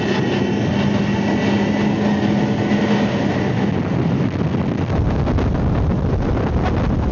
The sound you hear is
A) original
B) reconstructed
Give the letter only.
A